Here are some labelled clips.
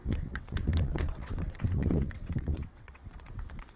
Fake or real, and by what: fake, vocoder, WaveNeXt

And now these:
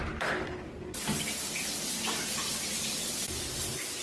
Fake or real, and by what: real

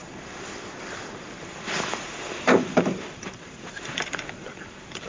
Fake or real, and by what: fake, vocoder, BigVGAN v2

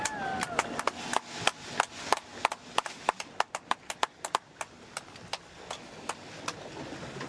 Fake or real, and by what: real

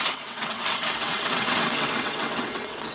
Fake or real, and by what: fake, vocoder, WaveNeXt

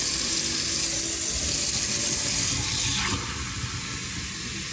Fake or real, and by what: real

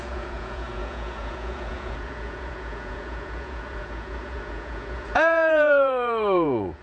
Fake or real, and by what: fake, vocoder, Vocos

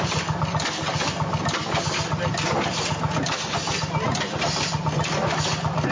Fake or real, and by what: real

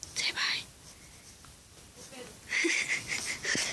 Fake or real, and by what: real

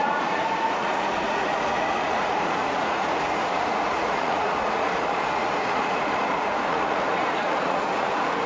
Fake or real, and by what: fake, vocoder, Vocos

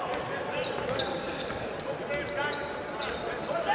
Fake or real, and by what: real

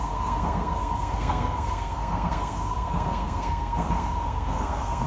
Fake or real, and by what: fake, codec, SNAC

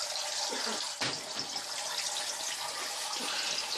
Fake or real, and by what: real